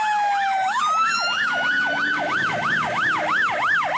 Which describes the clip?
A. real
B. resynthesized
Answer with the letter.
B